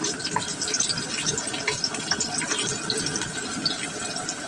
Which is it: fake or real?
real